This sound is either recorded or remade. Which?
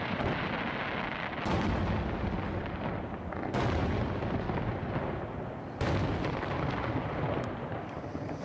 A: recorded